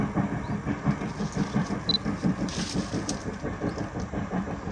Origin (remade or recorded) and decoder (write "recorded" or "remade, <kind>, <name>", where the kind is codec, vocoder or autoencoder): recorded